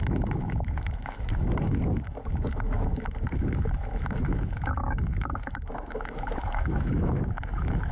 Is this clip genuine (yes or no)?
no